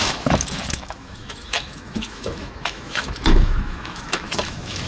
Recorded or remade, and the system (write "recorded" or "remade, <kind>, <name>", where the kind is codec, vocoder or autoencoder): remade, autoencoder, DAC-VAE